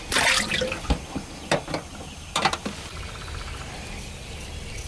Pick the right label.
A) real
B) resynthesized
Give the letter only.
B